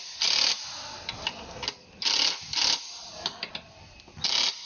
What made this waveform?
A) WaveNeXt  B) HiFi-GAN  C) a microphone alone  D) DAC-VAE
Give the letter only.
C